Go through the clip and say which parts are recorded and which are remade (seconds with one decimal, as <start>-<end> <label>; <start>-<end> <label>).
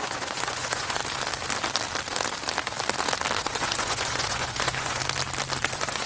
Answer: 0.0-1.0 remade; 1.0-3.4 recorded; 3.4-5.0 remade; 5.0-5.6 recorded; 5.6-6.1 remade